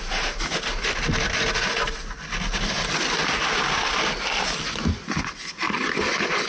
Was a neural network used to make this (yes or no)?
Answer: no